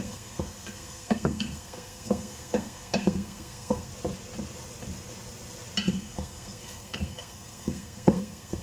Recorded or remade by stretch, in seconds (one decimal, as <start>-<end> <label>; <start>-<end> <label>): 0.0-3.9 remade; 3.9-5.9 recorded; 5.9-8.6 remade